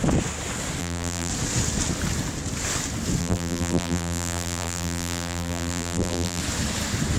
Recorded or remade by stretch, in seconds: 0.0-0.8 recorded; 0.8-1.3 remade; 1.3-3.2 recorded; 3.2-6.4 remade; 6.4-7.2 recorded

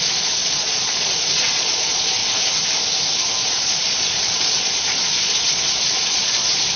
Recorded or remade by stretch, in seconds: 0.0-2.2 remade; 2.2-3.5 recorded; 3.5-6.8 remade

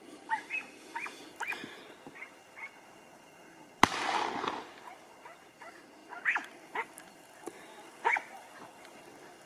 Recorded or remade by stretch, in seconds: 0.0-9.5 recorded

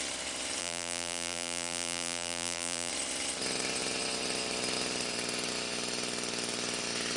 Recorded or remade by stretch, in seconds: 0.0-0.6 recorded; 0.6-2.9 remade; 2.9-7.2 recorded

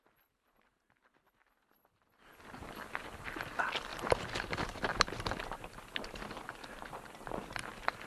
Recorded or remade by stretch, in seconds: 0.0-8.1 recorded

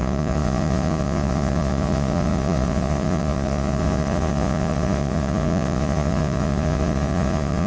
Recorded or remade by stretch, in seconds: 0.0-7.7 remade